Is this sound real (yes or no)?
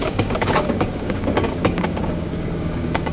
no